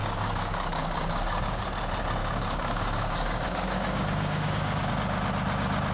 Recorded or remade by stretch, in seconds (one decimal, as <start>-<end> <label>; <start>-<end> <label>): 0.0-1.6 remade; 1.6-2.2 recorded; 2.2-4.9 remade; 4.9-5.9 recorded